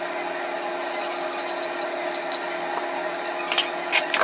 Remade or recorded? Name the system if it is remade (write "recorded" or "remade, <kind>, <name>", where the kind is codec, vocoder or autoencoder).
recorded